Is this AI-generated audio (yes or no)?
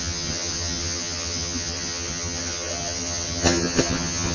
yes